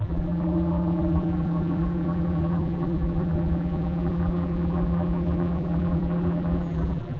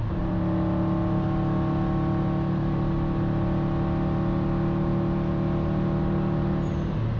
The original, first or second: second